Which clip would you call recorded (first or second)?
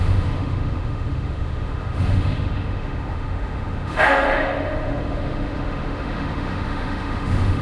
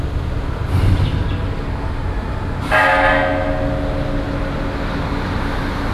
second